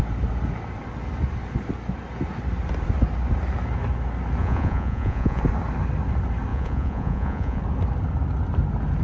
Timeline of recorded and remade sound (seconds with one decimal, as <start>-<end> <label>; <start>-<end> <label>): 0.0-4.4 recorded; 4.4-5.4 remade; 5.4-6.5 recorded; 6.5-7.6 remade; 7.6-9.0 recorded